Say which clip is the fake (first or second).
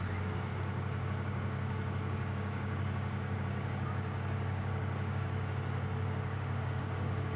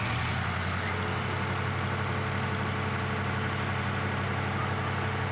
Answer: first